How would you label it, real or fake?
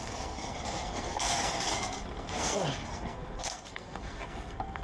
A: fake